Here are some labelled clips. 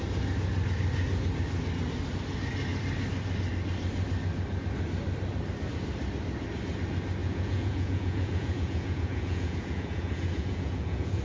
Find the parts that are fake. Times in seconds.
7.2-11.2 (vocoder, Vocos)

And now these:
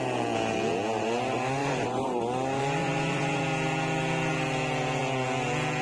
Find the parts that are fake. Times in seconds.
1.6-2.2 (vocoder, Vocos); 2.8-3.4

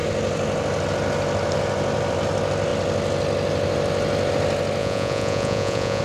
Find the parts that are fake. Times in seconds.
4.8-6.0 (vocoder, Vocos)

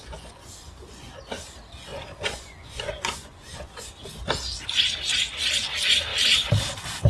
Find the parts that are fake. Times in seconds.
0.0-1.1 (vocoder, Vocos); 1.9-3.9

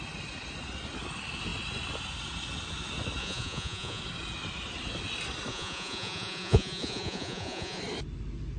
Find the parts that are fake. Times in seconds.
3.2-4.0 (vocoder, Vocos); 5.5-7.8

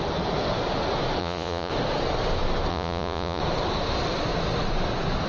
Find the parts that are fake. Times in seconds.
1.2-1.7 (vocoder, Vocos); 2.7-3.4

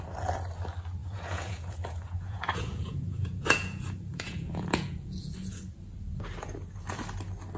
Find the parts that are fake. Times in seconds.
1.0-5.6 (vocoder, Vocos)